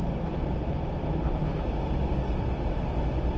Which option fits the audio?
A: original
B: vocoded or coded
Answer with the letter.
A